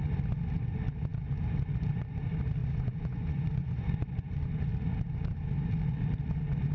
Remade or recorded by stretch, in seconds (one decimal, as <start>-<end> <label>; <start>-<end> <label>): 0.0-2.6 recorded; 2.6-4.0 remade; 4.0-6.7 recorded